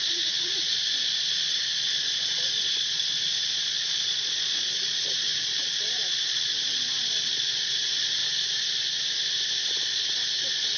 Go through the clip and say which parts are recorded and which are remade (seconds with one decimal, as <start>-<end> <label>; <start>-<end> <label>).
0.0-8.2 remade; 8.2-9.8 recorded; 9.8-10.8 remade